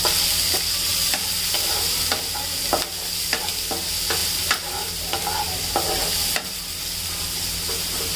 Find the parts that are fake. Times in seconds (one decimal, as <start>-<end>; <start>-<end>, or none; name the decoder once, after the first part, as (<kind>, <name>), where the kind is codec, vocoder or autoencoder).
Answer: 0.9-1.7 (vocoder, BigVGAN v2)